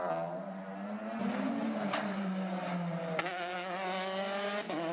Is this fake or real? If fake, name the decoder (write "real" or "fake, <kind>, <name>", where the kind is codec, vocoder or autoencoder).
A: real